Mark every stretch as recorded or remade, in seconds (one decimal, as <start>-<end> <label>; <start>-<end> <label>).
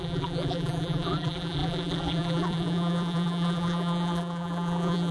0.0-5.1 remade